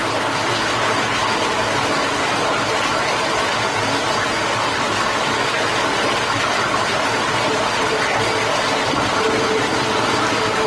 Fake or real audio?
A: real